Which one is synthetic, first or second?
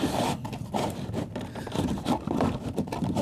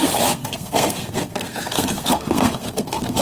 second